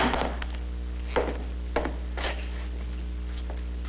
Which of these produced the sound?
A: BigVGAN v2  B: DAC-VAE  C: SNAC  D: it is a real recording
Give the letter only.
D